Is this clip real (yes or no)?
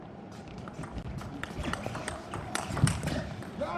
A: no